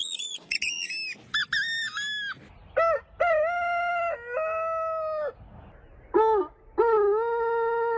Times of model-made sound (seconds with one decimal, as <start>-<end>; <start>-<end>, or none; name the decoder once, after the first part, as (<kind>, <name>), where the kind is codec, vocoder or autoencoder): 0.0-0.9 (vocoder, Vocos)